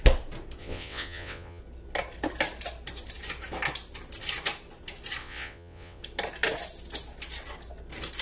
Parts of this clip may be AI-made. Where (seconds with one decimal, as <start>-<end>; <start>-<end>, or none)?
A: 0.6-1.6; 5.2-6.0